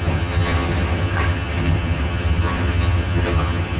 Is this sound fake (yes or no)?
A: yes